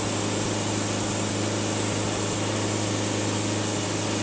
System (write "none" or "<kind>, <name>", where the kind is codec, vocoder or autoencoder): none